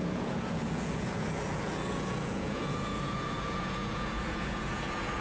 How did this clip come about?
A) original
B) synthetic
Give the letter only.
B